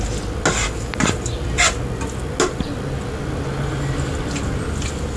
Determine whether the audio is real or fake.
real